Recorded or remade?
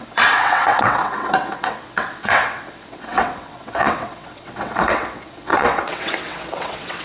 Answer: remade